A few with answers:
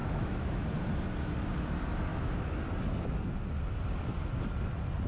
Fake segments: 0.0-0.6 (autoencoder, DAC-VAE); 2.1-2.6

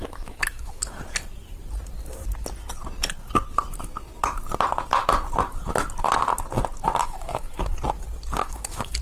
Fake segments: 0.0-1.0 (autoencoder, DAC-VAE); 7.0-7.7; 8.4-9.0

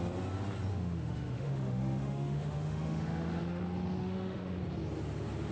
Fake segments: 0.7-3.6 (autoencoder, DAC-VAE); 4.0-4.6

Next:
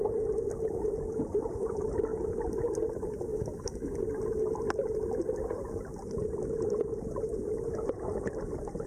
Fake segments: 3.3-4.0 (autoencoder, DAC-VAE)